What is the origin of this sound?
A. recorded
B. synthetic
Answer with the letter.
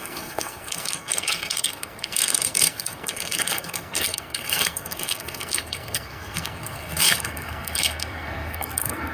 B